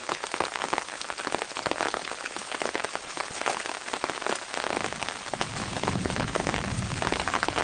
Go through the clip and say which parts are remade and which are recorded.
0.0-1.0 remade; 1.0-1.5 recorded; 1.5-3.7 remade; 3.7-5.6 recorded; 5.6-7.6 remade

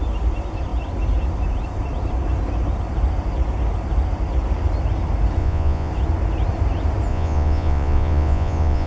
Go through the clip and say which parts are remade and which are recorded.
0.0-5.4 recorded; 5.4-5.9 remade; 5.9-7.1 recorded; 7.1-8.9 remade